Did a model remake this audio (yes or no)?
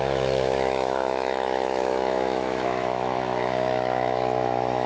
yes